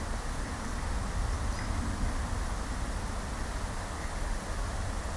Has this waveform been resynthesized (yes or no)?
no